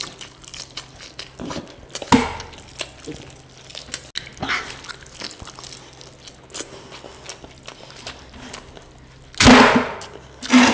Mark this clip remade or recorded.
recorded